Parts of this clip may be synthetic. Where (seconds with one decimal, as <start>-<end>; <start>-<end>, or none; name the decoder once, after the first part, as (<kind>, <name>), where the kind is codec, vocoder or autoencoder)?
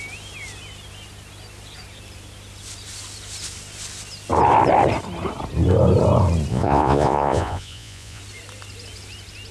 6.5-8.2 (vocoder, Vocos)